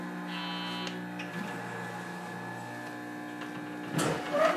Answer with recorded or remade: recorded